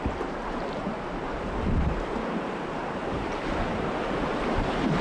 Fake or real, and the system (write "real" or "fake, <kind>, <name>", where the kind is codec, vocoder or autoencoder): fake, vocoder, BigVGAN v2